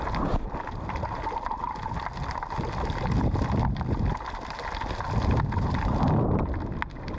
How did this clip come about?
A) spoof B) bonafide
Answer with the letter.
B